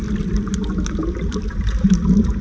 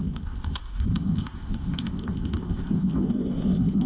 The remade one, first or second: second